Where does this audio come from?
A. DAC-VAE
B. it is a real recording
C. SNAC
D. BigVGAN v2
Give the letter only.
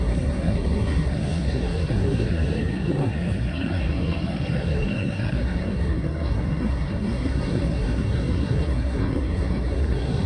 C